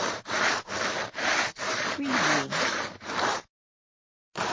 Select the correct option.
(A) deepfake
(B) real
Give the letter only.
A